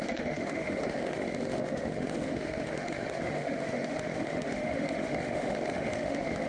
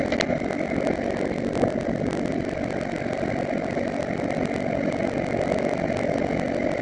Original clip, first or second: second